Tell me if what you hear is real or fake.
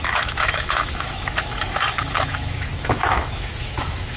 fake